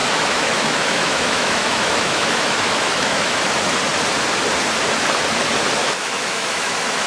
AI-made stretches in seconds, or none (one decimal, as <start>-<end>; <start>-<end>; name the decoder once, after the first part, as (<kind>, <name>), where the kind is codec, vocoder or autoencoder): 0.0-3.4 (autoencoder, DAC-VAE); 5.8-7.1